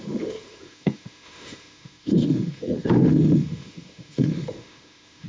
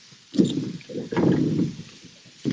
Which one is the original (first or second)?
second